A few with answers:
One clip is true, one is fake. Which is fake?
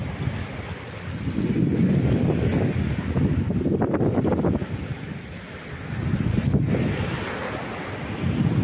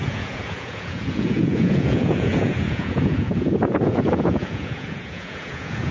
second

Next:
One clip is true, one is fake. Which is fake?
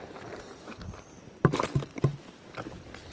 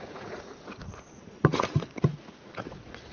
second